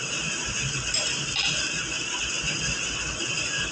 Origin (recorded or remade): recorded